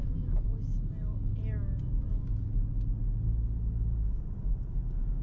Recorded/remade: recorded